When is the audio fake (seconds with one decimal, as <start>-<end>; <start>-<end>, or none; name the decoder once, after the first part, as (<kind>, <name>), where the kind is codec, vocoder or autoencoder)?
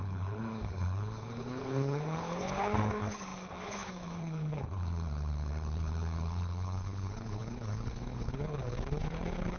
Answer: 0.0-9.6 (codec, HILCodec)